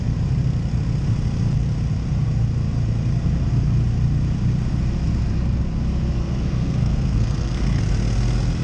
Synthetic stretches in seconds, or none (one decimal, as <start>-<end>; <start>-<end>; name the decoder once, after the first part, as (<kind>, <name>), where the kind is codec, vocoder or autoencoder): 6.2-7.8 (codec, SNAC)